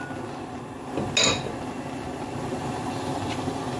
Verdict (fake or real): real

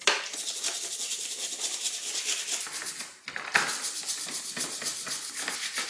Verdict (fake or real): real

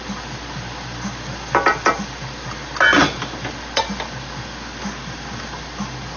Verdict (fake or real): real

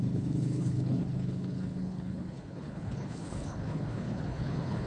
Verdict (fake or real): fake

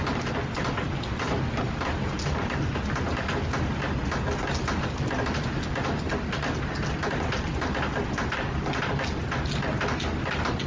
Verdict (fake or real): real